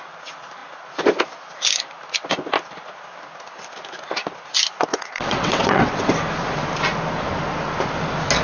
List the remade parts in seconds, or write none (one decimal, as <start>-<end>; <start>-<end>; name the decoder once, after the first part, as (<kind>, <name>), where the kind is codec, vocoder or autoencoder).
4.9-6.1 (vocoder, WaveNeXt)